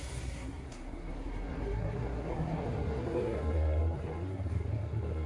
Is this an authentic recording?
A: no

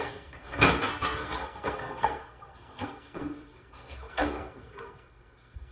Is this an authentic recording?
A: no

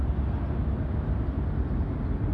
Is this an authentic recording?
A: yes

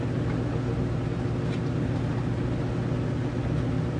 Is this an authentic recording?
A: yes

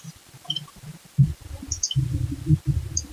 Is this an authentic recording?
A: yes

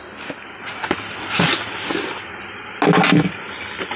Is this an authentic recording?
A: yes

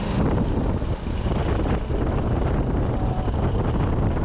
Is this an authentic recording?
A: yes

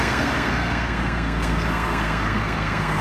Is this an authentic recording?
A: no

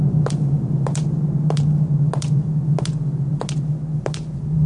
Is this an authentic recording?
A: yes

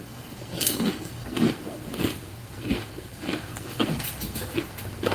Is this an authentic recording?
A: no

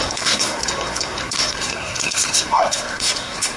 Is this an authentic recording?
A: no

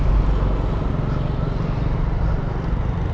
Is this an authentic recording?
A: yes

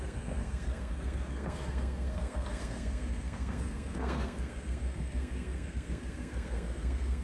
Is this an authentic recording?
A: no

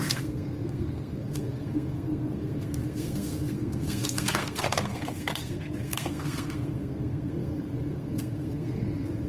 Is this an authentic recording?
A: no